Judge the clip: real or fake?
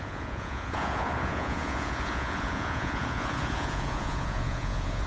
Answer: fake